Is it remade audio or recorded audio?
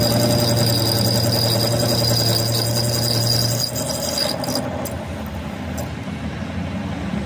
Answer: recorded